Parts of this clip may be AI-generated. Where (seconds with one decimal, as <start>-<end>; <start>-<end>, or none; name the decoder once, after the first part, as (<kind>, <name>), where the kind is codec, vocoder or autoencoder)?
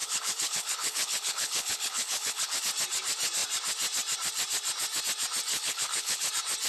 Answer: 0.0-2.6 (codec, HILCodec); 5.5-6.3